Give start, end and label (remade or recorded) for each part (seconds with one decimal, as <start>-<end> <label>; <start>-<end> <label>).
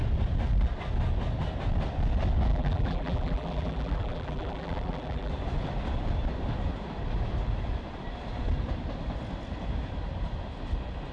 0.0-2.5 recorded; 2.5-5.3 remade; 5.3-11.1 recorded